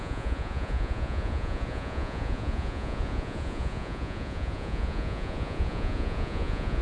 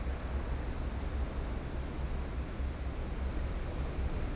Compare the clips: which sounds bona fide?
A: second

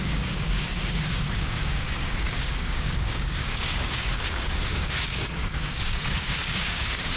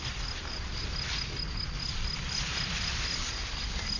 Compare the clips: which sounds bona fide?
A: second